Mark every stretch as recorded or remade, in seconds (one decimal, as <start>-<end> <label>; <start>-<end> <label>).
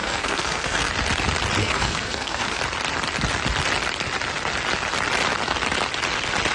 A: 0.0-0.9 remade; 0.9-1.6 recorded; 1.6-2.6 remade; 2.6-6.5 recorded